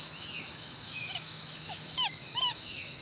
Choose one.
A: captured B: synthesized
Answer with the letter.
B